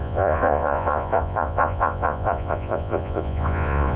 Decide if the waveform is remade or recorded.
remade